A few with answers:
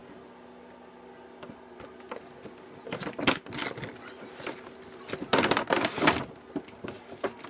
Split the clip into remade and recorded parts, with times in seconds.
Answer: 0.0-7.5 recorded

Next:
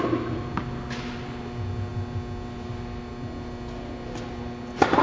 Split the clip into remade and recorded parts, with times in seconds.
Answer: 0.0-5.0 recorded

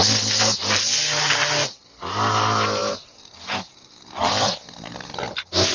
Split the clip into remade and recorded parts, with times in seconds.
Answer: 0.0-5.7 recorded

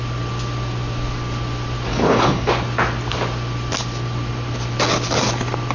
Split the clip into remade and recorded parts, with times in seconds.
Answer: 0.0-1.9 recorded; 1.9-2.5 remade; 2.5-5.7 recorded

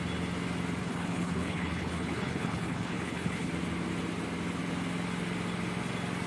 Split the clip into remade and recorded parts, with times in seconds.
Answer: 0.0-0.8 recorded; 0.8-3.5 remade; 3.5-6.3 recorded